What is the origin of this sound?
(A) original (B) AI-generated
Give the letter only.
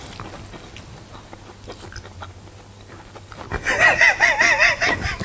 A